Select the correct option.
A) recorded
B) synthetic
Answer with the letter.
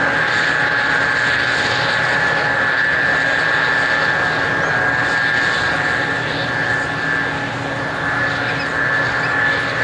A